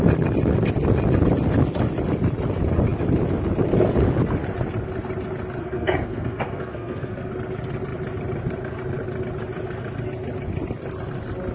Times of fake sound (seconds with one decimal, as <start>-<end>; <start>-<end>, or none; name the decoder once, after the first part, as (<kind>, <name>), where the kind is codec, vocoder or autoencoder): 5.6-7.3 (codec, SNAC)